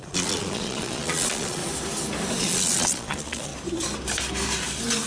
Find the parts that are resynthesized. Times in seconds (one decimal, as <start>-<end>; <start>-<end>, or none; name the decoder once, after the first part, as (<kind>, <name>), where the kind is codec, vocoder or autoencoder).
0.0-1.6 (vocoder, Vocos); 2.4-3.5